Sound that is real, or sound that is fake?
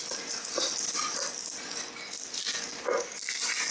real